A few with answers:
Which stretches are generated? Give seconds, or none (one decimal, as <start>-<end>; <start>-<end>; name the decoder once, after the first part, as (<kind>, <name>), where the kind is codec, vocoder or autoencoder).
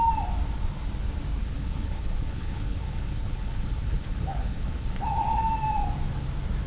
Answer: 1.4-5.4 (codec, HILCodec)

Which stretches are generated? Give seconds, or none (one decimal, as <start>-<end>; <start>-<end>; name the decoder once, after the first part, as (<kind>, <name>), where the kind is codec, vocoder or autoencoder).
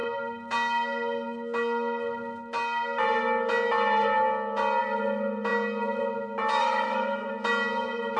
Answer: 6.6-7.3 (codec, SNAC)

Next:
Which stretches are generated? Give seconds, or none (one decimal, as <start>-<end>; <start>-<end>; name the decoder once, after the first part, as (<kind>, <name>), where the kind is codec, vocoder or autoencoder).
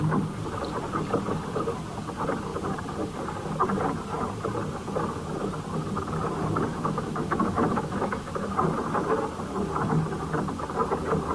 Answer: 6.7-8.3 (autoencoder, DAC-VAE)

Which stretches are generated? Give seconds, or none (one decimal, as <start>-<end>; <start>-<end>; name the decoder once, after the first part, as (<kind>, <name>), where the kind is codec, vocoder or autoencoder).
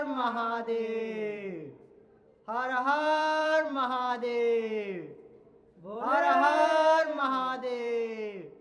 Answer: 0.0-8.6 (vocoder, BigVGAN v2)